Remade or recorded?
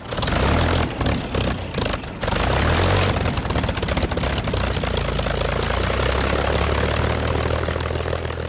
recorded